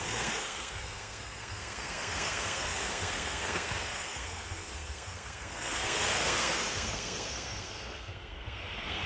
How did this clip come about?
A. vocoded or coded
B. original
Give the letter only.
A